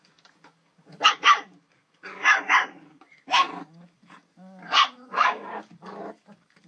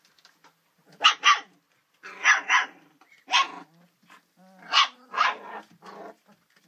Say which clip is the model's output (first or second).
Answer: first